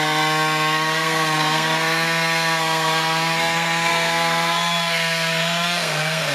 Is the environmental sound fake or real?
fake